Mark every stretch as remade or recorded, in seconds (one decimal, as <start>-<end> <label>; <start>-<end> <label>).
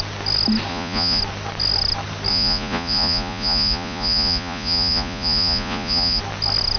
0.0-0.7 recorded; 0.7-1.2 remade; 1.2-2.3 recorded; 2.3-6.2 remade; 6.2-6.8 recorded